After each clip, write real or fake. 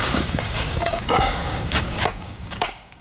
fake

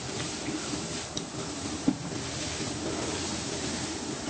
fake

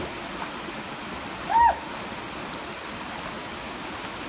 real